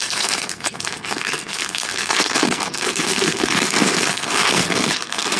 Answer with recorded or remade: remade